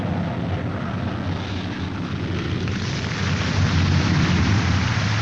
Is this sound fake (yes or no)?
no